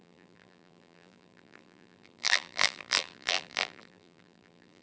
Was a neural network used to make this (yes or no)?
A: yes